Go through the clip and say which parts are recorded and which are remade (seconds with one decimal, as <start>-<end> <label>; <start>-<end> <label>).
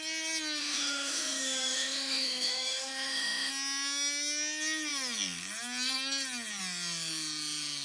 0.0-0.6 recorded; 0.6-3.5 remade; 3.5-7.8 recorded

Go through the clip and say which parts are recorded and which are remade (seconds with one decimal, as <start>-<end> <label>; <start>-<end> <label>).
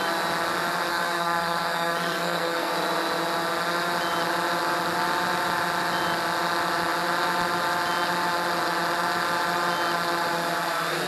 0.0-0.9 recorded; 0.9-2.7 remade; 2.7-11.1 recorded